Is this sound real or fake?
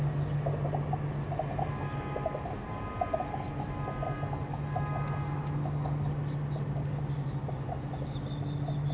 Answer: real